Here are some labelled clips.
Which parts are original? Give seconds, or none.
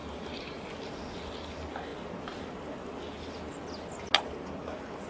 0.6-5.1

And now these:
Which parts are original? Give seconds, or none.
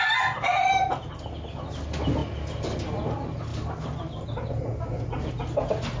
0.0-6.0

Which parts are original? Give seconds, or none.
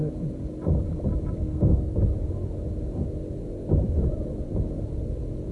0.0-1.4; 1.9-5.5